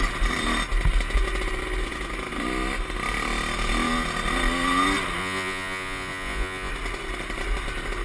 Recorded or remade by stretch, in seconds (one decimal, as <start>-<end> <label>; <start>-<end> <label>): 0.0-5.2 recorded; 5.2-6.7 remade; 6.7-8.0 recorded